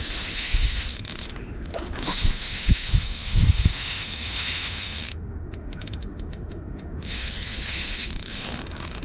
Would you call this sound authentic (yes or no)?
no